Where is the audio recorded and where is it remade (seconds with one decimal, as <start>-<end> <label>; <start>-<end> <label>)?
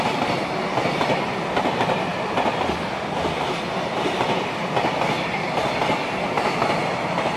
0.0-2.1 recorded; 2.1-2.6 remade; 2.6-7.4 recorded